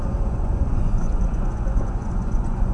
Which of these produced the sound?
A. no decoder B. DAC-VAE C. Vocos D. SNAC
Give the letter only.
C